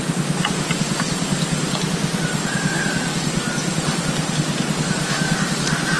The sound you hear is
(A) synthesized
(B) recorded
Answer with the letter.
B